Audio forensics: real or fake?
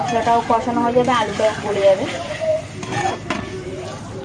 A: fake